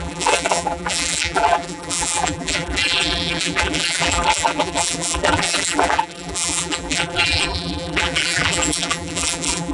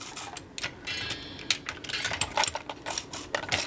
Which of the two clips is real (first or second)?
second